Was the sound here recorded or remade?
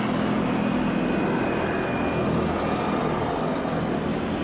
recorded